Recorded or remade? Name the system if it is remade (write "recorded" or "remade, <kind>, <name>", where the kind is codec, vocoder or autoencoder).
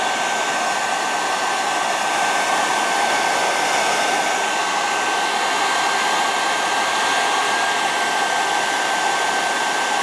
recorded